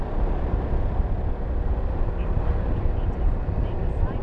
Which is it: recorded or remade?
recorded